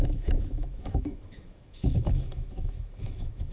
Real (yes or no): no